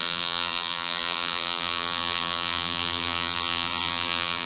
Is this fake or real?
fake